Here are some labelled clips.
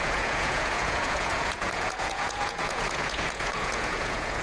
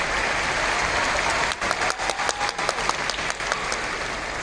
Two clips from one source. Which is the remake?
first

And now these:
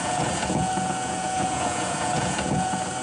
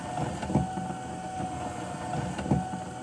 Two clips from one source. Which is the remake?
first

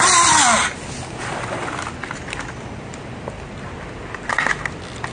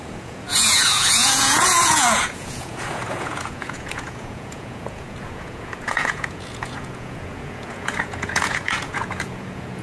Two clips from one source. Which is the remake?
second